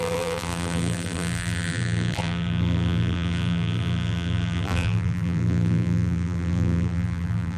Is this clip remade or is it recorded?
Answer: remade